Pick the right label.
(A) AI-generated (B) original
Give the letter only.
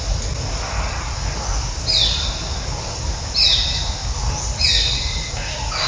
B